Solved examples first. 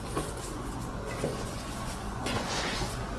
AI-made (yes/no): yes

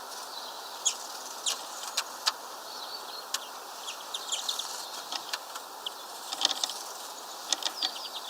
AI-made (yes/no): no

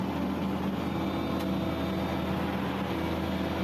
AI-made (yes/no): no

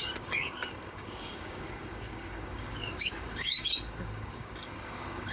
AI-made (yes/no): yes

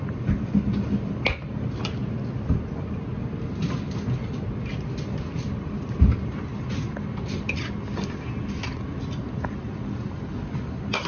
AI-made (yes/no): no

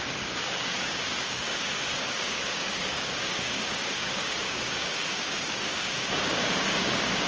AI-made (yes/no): yes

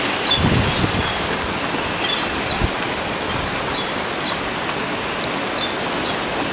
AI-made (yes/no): no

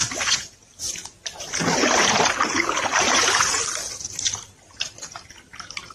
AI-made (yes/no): yes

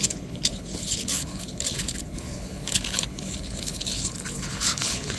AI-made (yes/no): yes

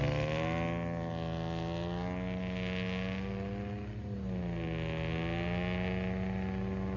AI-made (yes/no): no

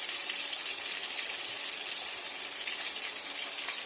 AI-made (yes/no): no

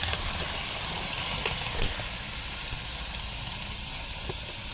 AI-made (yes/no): no